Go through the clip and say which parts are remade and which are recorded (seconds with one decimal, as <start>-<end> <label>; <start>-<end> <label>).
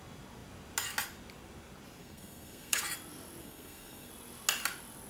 0.0-2.0 recorded; 2.0-2.8 remade; 2.8-3.4 recorded; 3.4-4.1 remade; 4.1-5.1 recorded